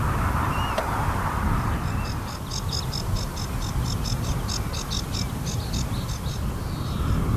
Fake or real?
real